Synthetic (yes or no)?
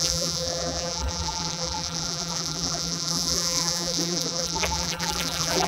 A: yes